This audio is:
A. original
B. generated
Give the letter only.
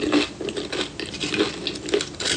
A